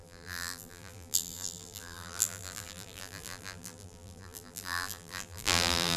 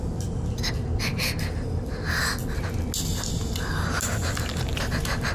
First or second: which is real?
second